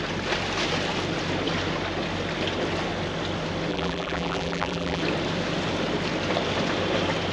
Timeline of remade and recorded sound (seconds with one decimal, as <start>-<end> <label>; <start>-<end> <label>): 0.0-3.7 recorded; 3.7-5.0 remade; 5.0-7.3 recorded